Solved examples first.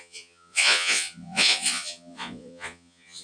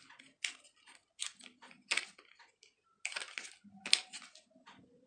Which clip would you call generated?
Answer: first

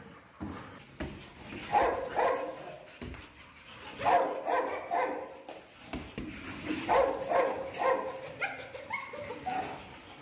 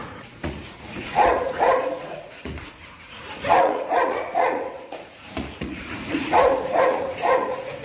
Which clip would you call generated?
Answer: second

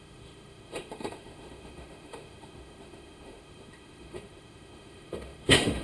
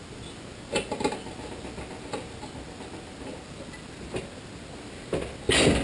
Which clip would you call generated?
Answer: first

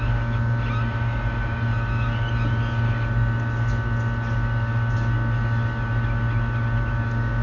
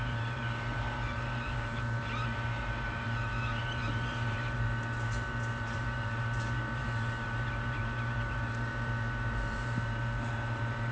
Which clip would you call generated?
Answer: second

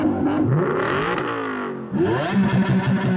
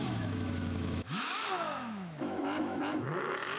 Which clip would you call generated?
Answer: second